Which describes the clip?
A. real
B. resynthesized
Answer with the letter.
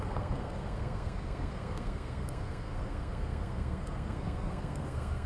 B